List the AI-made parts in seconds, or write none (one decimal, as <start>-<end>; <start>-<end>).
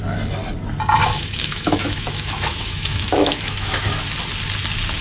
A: 1.0-4.0